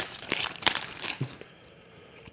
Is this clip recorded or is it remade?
remade